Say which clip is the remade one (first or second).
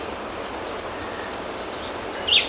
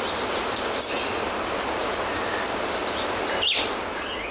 first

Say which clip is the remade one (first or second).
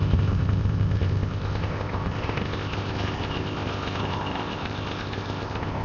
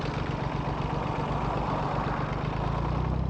first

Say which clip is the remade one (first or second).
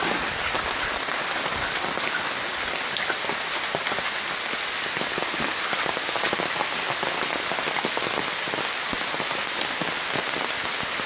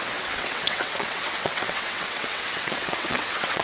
second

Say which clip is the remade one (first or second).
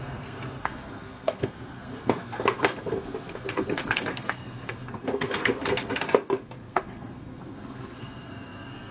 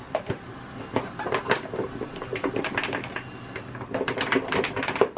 first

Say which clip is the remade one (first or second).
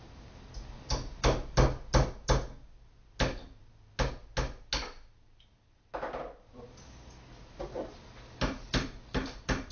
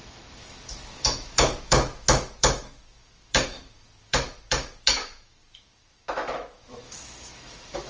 second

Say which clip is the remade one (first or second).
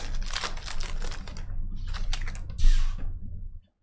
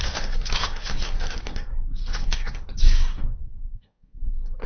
second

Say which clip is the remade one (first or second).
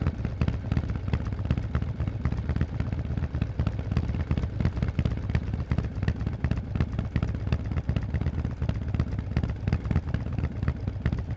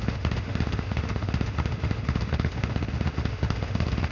second